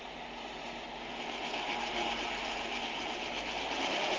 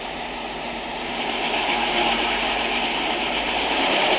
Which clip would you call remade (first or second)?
second